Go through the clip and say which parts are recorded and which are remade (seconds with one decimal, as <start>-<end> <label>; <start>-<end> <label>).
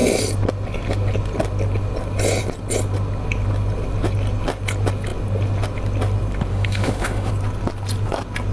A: 0.0-6.5 recorded; 6.5-7.3 remade; 7.3-8.5 recorded